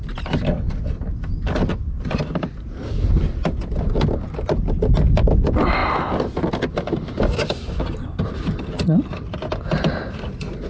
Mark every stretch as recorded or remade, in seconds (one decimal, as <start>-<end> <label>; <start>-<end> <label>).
0.0-10.7 recorded